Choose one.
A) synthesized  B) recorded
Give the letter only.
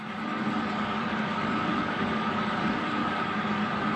A